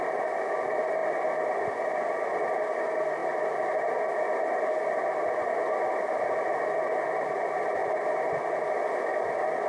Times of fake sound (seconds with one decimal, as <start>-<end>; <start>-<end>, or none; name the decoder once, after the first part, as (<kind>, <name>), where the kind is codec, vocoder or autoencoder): 7.8-8.4 (vocoder, BigVGAN v2)